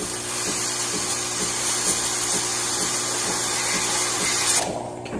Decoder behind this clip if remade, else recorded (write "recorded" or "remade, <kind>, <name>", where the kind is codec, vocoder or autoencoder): recorded